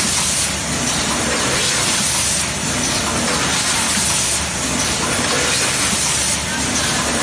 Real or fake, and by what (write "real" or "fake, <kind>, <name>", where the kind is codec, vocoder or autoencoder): real